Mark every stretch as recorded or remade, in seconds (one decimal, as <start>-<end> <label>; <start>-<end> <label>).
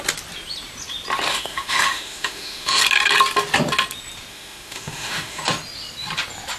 0.0-1.3 recorded; 1.3-2.8 remade; 2.8-4.3 recorded; 4.3-5.4 remade; 5.4-6.6 recorded